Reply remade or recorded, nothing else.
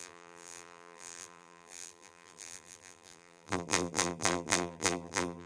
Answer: remade